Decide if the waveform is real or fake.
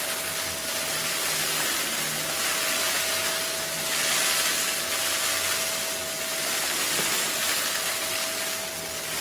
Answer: real